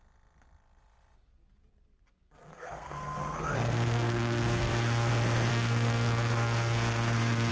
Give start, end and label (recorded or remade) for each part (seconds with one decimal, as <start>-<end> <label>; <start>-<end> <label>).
0.0-2.5 recorded; 2.5-5.1 remade; 5.1-5.5 recorded; 5.5-7.5 remade